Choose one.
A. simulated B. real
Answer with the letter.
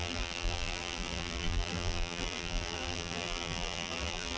A